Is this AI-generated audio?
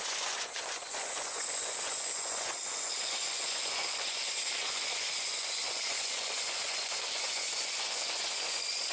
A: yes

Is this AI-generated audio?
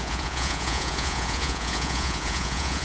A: yes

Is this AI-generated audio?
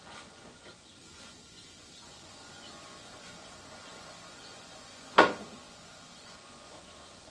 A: yes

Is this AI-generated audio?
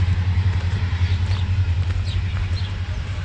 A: yes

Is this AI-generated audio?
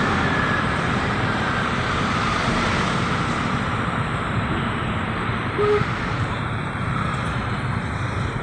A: yes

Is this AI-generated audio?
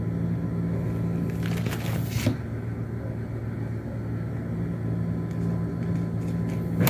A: no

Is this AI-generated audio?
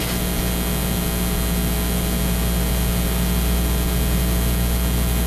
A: no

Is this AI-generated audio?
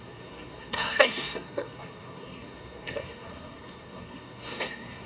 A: yes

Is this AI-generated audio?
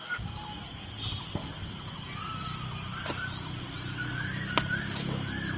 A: no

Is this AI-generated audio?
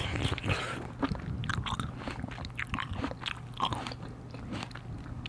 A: no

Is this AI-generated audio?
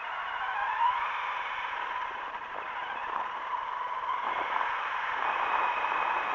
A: yes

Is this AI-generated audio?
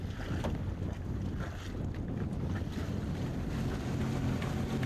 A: no